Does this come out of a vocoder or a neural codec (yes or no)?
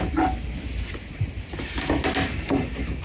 no